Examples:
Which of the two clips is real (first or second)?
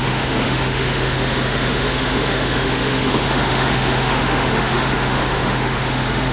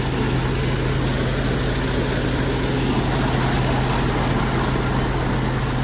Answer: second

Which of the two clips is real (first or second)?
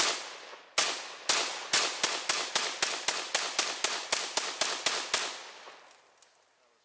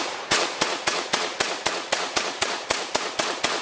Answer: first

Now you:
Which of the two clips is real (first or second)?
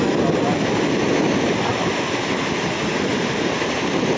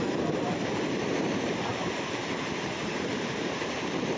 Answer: first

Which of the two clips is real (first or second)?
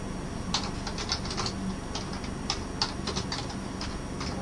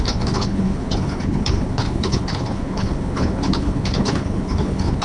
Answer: first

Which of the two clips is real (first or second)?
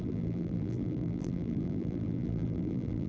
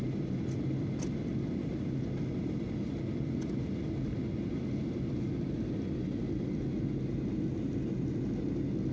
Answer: second